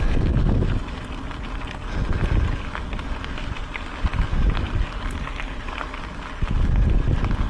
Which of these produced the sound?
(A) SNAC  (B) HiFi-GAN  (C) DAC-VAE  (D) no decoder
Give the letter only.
D